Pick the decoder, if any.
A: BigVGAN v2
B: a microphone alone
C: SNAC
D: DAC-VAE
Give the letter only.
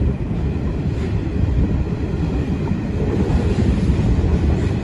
A